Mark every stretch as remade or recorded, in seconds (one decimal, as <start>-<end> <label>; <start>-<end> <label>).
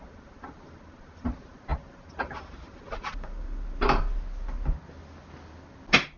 0.0-1.7 recorded; 1.7-4.0 remade; 4.0-6.2 recorded